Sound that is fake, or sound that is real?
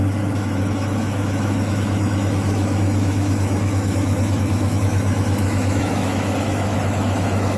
fake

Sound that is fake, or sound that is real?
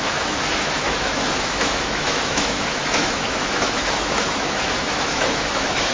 fake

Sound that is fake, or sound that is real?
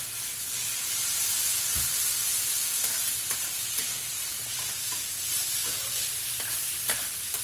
real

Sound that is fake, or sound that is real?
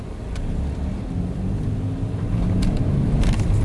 real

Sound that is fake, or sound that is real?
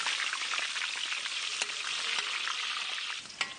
real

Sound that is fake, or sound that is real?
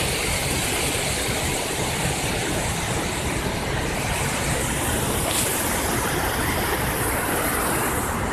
real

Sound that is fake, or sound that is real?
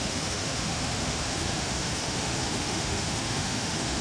fake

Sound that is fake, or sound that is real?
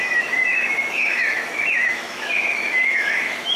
fake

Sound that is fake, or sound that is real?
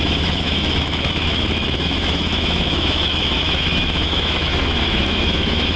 fake